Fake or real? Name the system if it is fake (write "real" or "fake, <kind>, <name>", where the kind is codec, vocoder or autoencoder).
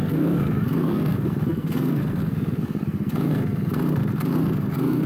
fake, codec, SNAC